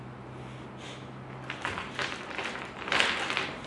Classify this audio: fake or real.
real